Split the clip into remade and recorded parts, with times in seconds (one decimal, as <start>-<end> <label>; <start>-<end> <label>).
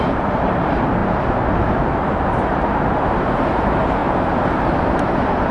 0.0-5.5 remade